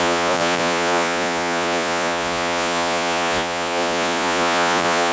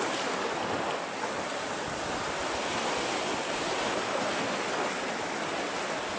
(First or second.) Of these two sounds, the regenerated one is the first